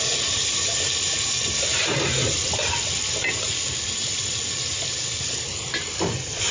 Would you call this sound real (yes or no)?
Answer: yes